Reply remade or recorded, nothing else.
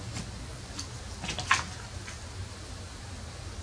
recorded